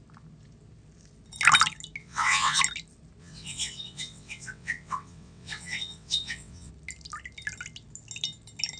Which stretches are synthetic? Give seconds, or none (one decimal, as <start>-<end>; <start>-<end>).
2.0-2.6; 3.2-6.7